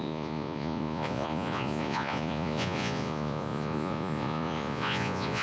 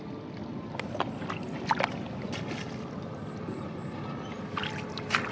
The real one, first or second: second